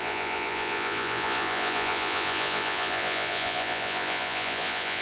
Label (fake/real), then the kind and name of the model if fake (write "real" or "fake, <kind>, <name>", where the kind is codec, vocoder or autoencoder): fake, vocoder, Vocos